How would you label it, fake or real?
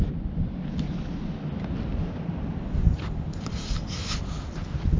real